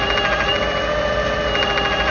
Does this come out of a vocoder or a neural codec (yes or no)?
no